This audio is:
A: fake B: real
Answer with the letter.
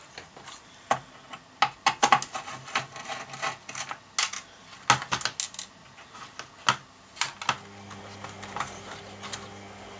B